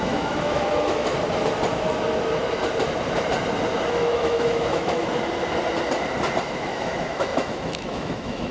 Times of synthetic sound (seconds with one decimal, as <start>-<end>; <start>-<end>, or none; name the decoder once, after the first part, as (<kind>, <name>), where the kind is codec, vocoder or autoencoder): 0.0-1.1 (autoencoder, DAC-VAE); 3.9-5.0; 6.4-8.5